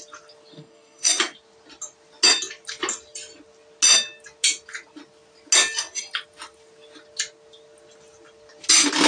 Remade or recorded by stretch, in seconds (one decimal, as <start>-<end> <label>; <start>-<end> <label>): 0.0-0.5 recorded; 0.5-1.2 remade; 1.2-9.1 recorded